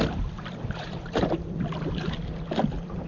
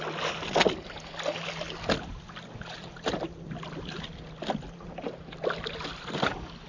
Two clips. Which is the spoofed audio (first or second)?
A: first